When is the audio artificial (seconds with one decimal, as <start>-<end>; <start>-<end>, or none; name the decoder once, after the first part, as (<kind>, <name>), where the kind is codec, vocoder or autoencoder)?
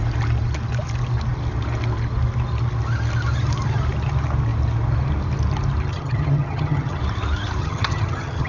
5.9-7.0 (vocoder, HiFi-GAN); 7.6-8.5